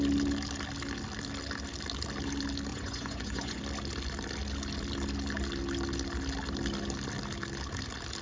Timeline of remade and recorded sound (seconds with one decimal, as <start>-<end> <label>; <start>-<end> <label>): 0.0-2.7 recorded; 2.7-3.6 remade; 3.6-8.2 recorded

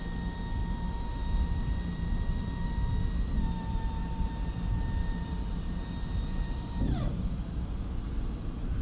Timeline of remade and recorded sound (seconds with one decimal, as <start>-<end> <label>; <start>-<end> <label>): 0.0-0.6 recorded; 0.6-2.9 remade; 2.9-4.0 recorded; 4.0-8.8 remade